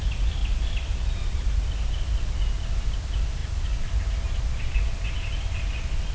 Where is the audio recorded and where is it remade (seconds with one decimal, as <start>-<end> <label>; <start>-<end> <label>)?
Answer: 0.0-6.1 recorded